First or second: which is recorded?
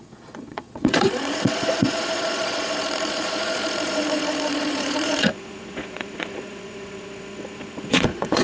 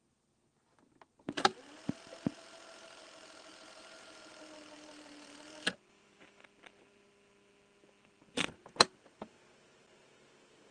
second